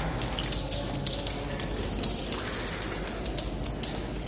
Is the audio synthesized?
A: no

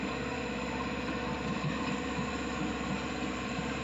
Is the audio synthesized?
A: yes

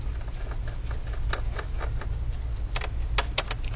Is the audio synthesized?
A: no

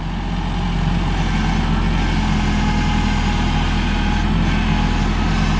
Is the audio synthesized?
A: no